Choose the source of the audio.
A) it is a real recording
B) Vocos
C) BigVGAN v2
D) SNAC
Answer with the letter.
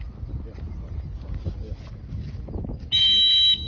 A